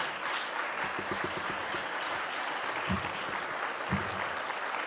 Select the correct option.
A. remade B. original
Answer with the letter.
B